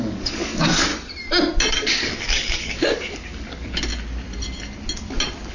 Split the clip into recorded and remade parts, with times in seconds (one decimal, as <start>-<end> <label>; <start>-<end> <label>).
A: 0.0-0.9 remade; 0.9-1.7 recorded; 1.7-3.9 remade; 3.9-5.5 recorded